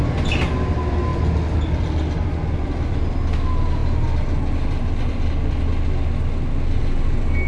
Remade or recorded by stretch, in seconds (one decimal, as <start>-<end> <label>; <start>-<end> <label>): 0.0-7.5 recorded

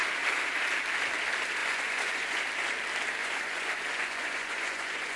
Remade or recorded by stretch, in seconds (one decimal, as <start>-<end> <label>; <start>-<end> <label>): 0.0-1.6 recorded; 1.6-2.4 remade; 2.4-3.2 recorded; 3.2-5.2 remade

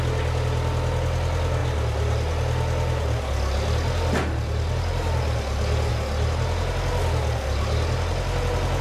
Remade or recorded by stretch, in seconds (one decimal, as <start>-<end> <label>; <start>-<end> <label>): 0.0-8.8 recorded

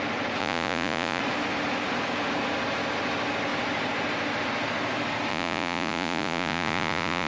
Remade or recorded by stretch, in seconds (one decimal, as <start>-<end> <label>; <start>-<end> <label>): 0.0-0.4 recorded; 0.4-1.2 remade; 1.2-5.3 recorded; 5.3-7.3 remade

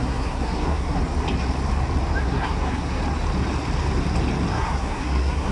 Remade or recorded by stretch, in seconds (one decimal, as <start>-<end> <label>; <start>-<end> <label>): 0.0-1.0 remade; 1.0-2.2 recorded; 2.2-3.0 remade; 3.0-4.5 recorded; 4.5-5.5 remade